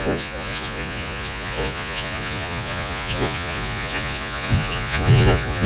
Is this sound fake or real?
fake